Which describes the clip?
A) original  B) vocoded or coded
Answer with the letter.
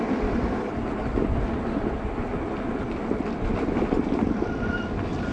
B